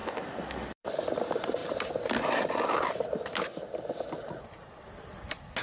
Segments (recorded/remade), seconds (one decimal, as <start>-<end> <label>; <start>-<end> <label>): 0.0-0.9 remade; 0.9-5.6 recorded